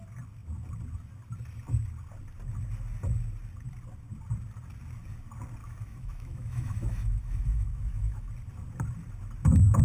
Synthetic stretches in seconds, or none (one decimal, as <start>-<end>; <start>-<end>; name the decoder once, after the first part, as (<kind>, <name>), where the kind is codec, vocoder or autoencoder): 5.6-8.3 (autoencoder, DAC-VAE)